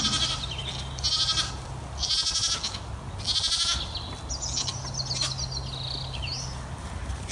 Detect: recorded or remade recorded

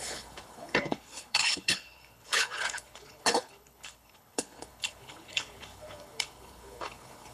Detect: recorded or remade remade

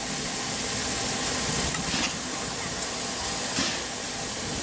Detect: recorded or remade recorded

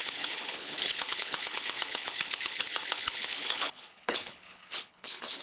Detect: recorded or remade remade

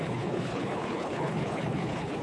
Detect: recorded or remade remade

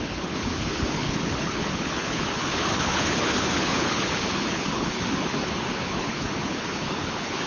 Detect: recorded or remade remade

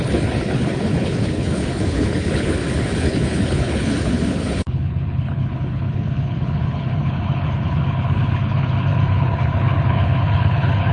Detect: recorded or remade remade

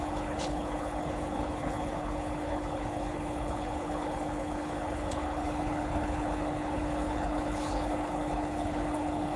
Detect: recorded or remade remade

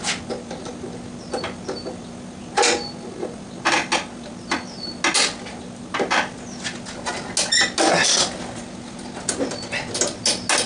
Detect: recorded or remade recorded